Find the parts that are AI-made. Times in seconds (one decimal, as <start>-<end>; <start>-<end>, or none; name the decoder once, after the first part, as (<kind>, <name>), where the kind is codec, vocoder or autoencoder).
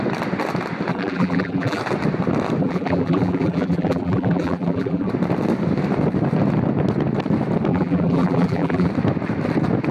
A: 0.9-1.8 (vocoder, BigVGAN v2); 2.6-5.1; 7.7-8.9